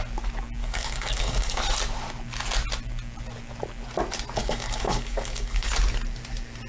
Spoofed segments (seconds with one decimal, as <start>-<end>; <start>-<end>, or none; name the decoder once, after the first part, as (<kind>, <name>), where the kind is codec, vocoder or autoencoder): 0.6-1.6 (codec, DAC); 4.4-5.7